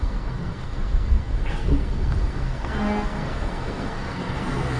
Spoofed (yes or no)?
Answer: yes